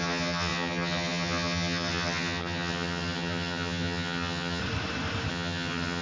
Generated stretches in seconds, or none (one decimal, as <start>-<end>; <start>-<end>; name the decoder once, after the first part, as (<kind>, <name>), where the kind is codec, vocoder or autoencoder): 0.0-4.6 (vocoder, HiFi-GAN); 5.3-6.0